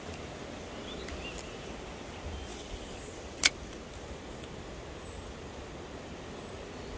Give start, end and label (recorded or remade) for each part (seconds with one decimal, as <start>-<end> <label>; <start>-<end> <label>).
0.0-7.0 recorded